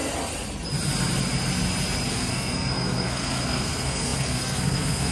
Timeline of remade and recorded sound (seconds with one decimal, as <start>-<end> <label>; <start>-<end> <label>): 0.0-2.1 recorded; 2.1-5.1 remade